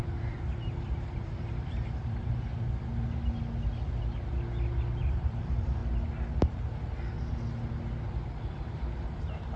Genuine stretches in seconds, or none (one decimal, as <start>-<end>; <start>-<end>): 2.5-5.0; 5.8-8.4